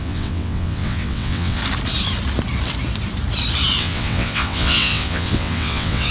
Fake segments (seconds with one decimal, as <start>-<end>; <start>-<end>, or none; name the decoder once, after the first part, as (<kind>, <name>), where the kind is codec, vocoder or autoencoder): 0.0-1.6 (vocoder, WaveNeXt); 3.8-6.1